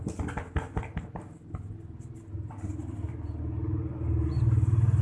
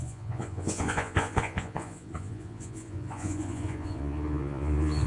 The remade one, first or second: second